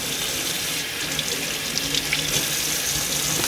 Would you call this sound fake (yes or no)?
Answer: no